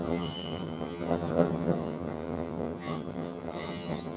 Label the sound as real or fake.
fake